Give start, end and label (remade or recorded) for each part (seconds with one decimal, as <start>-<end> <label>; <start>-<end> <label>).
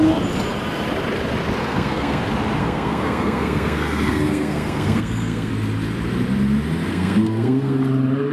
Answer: 0.0-1.6 recorded; 1.6-2.2 remade; 2.2-2.6 recorded; 2.6-5.5 remade; 5.5-6.9 recorded; 6.9-7.8 remade; 7.8-8.3 recorded